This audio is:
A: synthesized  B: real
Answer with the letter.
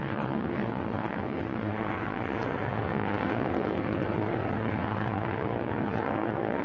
A